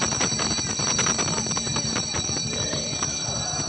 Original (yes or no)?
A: yes